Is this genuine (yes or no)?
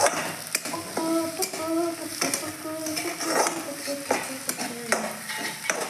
yes